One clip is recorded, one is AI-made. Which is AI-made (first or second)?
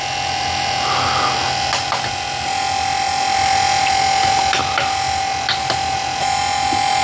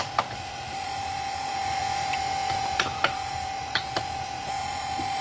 second